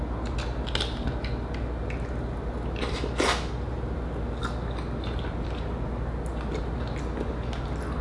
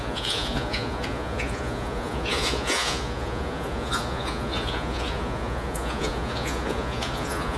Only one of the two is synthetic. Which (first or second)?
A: second